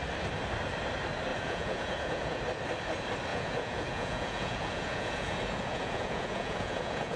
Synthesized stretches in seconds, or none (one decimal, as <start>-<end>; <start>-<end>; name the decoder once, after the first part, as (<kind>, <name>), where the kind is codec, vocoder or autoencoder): 1.3-2.4 (vocoder, Vocos); 3.3-7.2